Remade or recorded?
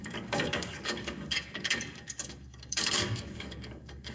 remade